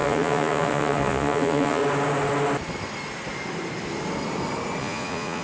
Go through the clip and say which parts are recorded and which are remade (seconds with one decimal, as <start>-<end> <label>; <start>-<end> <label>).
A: 0.0-1.8 remade; 1.8-4.8 recorded; 4.8-5.4 remade